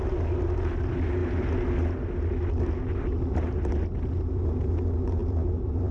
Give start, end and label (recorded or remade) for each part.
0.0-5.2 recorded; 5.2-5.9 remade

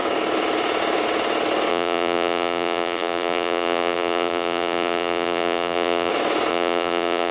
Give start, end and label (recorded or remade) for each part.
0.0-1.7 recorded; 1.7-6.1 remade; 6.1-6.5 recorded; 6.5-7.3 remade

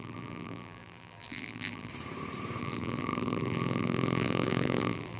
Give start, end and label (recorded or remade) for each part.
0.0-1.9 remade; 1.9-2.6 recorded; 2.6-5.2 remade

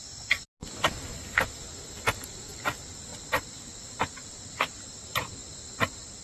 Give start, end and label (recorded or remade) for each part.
0.0-6.2 recorded